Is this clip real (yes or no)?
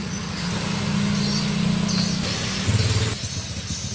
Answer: yes